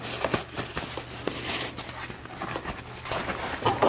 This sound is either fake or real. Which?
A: real